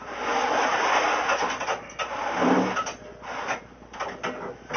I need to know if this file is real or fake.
real